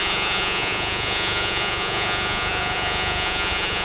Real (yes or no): no